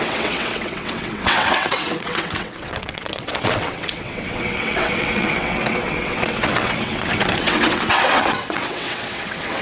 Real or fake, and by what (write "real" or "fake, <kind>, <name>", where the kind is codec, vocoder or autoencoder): fake, vocoder, WaveNeXt